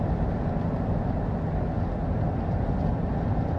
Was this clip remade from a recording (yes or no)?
no